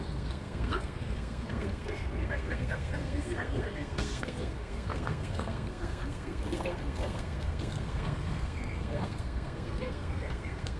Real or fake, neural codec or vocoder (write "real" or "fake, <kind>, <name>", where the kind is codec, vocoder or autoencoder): fake, codec, SNAC